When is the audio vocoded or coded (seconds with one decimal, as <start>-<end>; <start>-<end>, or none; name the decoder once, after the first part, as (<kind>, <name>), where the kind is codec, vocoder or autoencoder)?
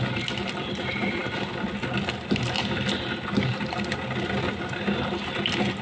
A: none